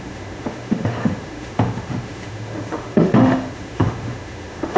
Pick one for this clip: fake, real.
fake